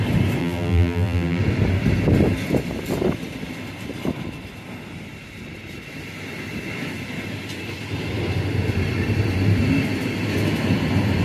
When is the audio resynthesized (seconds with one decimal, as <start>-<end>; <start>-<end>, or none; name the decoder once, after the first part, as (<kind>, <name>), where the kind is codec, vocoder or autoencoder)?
0.4-1.4 (vocoder, BigVGAN v2)